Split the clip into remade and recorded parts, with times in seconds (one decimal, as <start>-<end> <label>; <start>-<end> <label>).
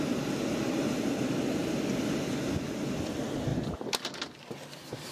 0.0-5.1 recorded